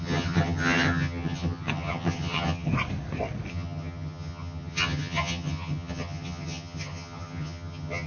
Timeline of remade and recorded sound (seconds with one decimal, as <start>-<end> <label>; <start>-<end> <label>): 0.0-2.7 remade; 2.7-3.5 recorded; 3.5-8.1 remade